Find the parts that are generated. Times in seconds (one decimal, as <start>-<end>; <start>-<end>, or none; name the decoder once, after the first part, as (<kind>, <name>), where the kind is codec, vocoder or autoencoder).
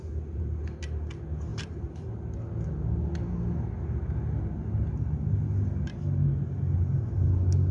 none